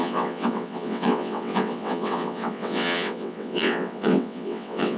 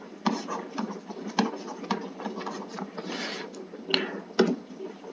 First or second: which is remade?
first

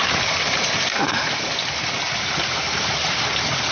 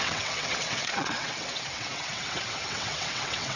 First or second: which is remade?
second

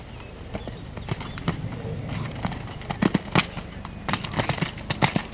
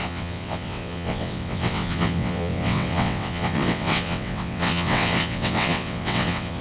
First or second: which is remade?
second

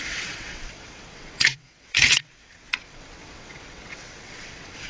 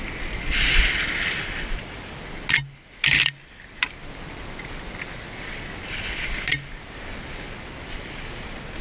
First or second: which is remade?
first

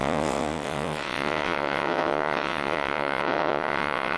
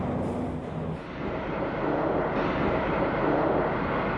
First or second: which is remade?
first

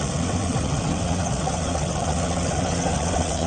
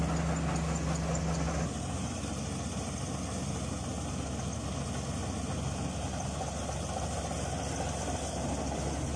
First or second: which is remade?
first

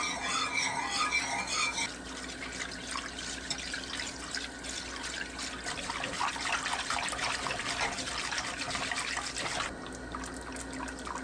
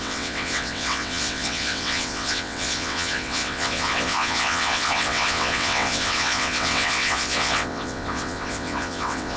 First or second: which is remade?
second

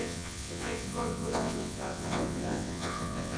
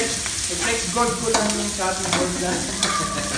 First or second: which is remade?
first